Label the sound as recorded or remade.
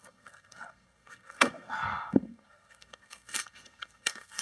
remade